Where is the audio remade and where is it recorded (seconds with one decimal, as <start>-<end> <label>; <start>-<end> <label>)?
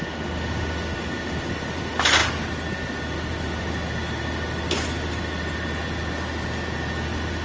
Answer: 0.0-7.4 recorded